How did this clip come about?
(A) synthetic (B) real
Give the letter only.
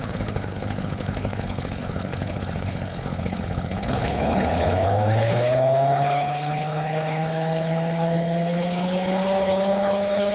A